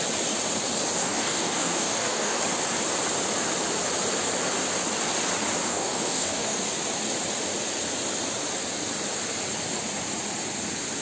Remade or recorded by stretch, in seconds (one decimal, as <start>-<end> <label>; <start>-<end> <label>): 0.0-1.0 recorded; 1.0-2.4 remade; 2.4-5.7 recorded; 5.7-6.6 remade; 6.6-11.0 recorded